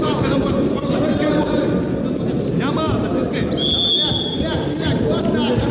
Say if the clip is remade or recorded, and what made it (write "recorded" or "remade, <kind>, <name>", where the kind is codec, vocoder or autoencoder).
recorded